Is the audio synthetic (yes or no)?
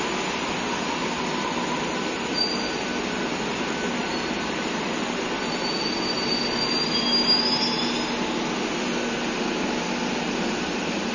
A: no